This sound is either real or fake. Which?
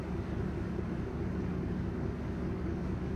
fake